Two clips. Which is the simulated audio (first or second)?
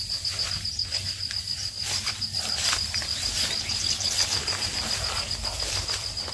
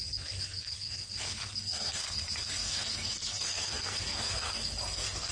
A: second